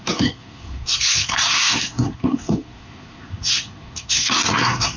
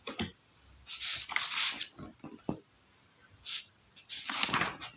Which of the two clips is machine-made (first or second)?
first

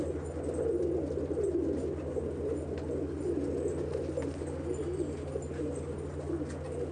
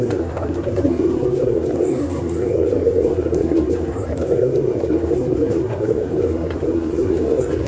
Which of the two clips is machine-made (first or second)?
second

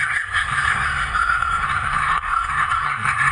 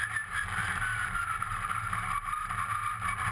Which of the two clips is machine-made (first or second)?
first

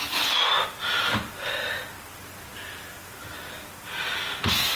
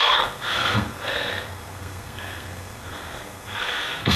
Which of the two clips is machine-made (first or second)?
second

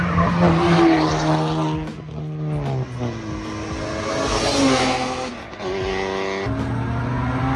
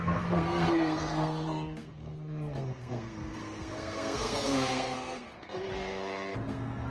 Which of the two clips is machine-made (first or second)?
second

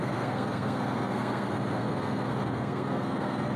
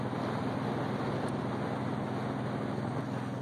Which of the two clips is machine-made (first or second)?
first